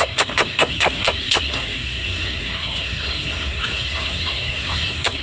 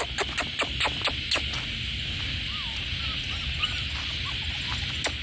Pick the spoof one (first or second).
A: first